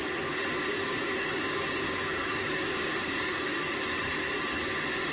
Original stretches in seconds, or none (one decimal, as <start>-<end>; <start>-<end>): 0.0-0.7; 3.8-5.1